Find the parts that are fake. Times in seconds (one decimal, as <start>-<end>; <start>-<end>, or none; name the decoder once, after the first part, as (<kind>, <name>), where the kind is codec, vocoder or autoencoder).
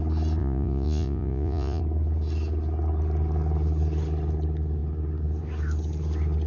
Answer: 0.4-1.8 (vocoder, Vocos)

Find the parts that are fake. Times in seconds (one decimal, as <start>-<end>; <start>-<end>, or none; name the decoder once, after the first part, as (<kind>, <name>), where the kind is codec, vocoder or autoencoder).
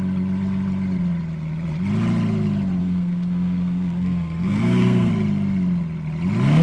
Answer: 2.8-5.1 (codec, SNAC)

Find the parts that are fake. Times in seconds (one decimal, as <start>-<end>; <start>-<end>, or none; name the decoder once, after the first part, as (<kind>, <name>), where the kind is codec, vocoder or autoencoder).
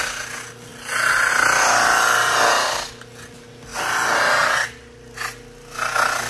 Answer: none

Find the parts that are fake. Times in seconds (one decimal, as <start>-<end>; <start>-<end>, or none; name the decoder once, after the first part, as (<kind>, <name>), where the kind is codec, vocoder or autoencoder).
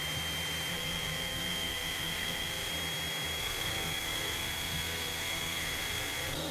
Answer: 0.7-2.7 (codec, SNAC); 3.4-6.5